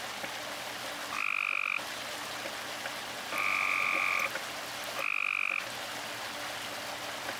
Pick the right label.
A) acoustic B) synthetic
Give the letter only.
A